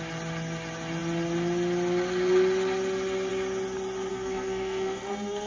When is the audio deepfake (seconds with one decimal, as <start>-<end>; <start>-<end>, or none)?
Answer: 4.1-5.5